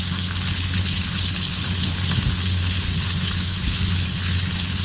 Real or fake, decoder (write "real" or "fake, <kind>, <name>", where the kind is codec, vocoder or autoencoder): fake, codec, HILCodec